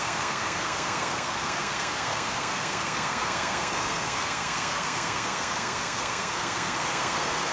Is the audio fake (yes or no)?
yes